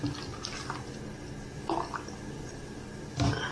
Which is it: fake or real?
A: real